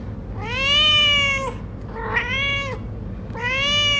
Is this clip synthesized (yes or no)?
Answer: no